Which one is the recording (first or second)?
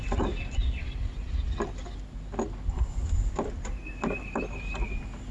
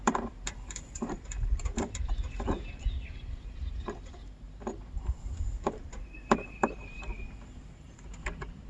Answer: first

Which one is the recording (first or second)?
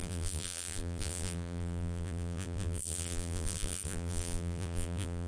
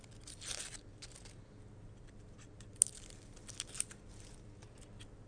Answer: second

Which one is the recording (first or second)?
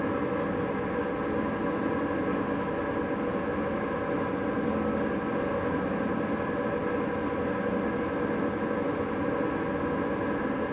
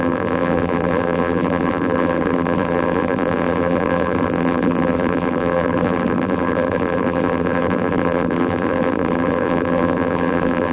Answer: first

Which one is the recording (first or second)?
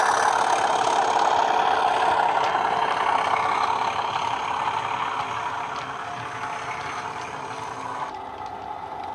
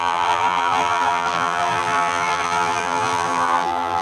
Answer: first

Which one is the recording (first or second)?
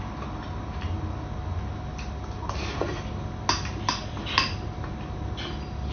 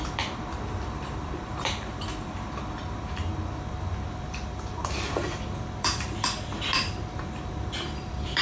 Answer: first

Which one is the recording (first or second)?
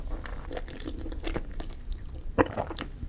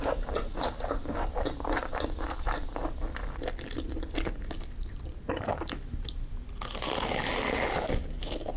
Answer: second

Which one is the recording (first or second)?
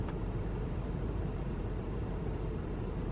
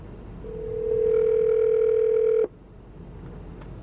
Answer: second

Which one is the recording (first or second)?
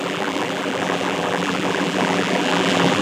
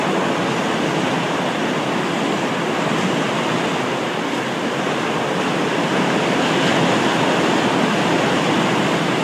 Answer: second